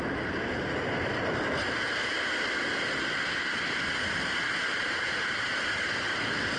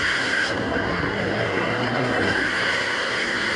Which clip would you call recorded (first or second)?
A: first